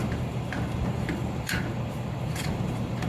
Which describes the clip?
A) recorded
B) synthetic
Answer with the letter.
B